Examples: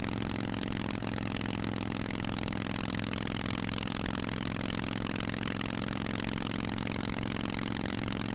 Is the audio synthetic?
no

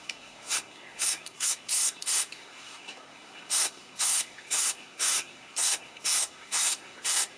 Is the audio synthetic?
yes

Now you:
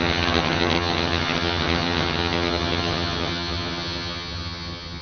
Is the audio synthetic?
yes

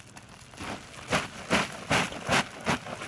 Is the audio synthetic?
no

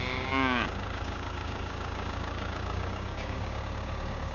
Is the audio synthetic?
yes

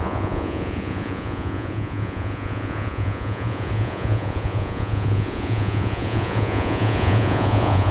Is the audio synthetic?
yes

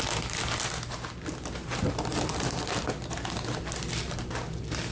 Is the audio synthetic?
no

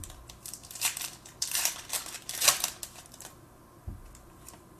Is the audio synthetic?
yes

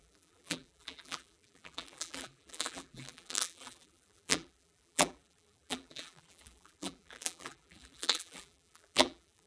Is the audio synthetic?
yes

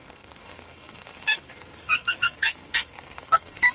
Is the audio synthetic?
yes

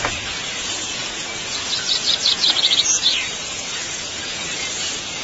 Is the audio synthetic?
yes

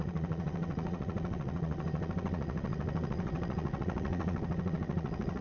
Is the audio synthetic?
yes